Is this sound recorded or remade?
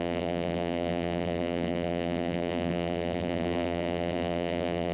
remade